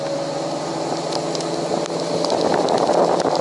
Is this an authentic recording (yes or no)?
yes